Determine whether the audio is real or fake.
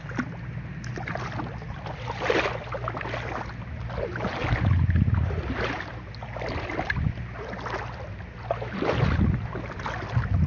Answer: real